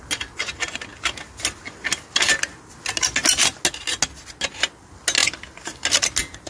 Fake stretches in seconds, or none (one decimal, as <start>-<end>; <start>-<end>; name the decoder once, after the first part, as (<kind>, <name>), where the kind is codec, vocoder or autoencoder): none